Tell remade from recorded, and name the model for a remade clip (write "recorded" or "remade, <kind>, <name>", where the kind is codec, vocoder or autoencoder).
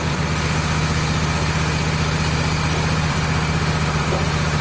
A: recorded